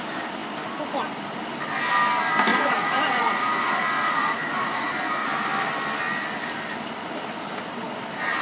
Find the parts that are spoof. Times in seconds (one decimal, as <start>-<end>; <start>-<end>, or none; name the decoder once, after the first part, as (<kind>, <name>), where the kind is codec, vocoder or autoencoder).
2.5-5.3 (vocoder, Vocos)